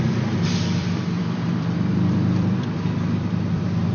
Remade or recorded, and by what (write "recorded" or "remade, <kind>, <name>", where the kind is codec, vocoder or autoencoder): remade, vocoder, BigVGAN v2